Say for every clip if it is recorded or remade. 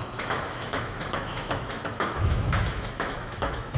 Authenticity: remade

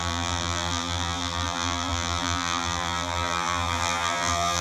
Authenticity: remade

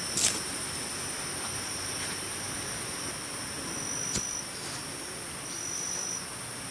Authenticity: recorded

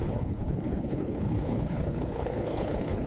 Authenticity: remade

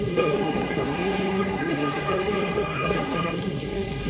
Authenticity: remade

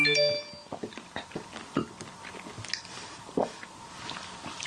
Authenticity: recorded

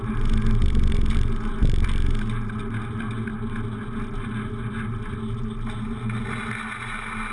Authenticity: recorded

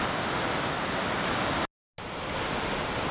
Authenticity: recorded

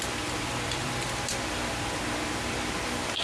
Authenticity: remade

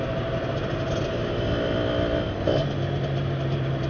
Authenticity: recorded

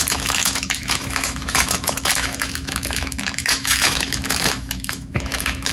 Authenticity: remade